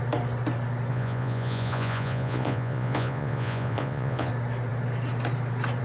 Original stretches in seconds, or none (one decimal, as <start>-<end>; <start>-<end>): 0.0-0.9; 4.3-5.8

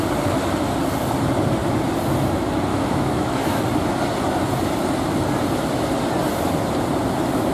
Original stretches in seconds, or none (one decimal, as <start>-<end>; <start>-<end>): 0.0-2.7; 3.6-7.5

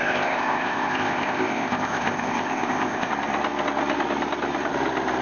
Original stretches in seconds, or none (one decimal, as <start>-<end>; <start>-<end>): 3.1-5.2

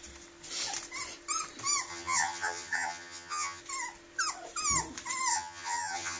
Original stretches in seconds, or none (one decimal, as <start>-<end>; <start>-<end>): 0.0-1.9; 3.6-5.3

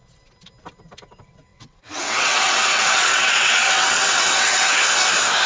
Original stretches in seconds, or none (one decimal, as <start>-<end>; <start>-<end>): 0.0-1.5; 4.8-5.5

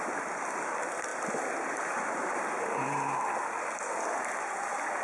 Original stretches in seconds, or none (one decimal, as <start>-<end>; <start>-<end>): 0.0-5.0

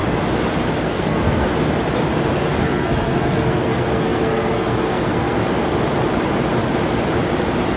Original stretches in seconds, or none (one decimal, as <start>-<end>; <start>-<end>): 0.0-0.8; 1.5-2.6; 5.4-7.8